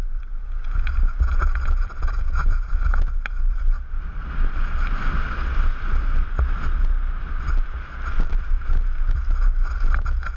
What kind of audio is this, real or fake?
real